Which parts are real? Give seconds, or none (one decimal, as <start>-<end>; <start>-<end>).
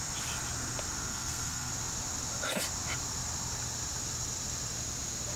0.0-1.1; 1.7-5.4